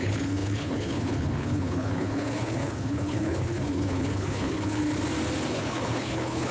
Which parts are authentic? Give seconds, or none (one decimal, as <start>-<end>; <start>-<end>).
4.8-5.5